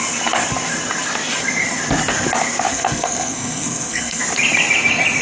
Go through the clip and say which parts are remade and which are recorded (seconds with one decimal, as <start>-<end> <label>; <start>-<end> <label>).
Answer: 0.0-2.7 recorded; 2.7-4.2 remade; 4.2-5.2 recorded